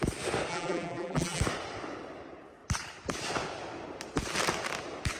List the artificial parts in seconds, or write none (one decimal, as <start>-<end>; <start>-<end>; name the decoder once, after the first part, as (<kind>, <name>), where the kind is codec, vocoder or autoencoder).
0.5-1.4 (vocoder, BigVGAN v2)